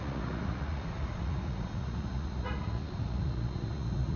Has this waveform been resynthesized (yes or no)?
yes